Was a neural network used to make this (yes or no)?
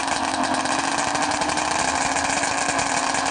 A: no